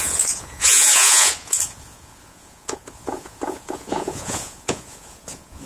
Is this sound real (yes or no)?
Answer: no